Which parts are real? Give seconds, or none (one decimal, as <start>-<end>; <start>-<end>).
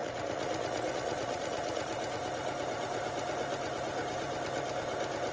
1.9-5.3